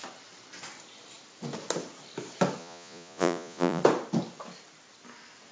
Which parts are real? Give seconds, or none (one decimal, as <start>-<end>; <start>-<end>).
0.0-2.6; 3.8-5.5